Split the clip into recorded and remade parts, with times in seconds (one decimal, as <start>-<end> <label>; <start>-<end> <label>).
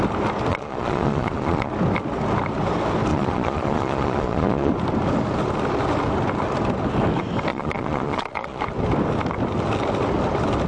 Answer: 0.0-0.5 recorded; 0.5-1.7 remade; 1.7-3.1 recorded; 3.1-4.7 remade; 4.7-7.5 recorded; 7.5-8.6 remade; 8.6-10.7 recorded